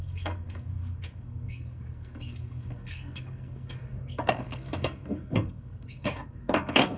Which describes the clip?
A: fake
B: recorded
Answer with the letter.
A